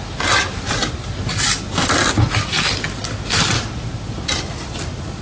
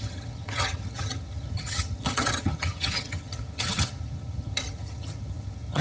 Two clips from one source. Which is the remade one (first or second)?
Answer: second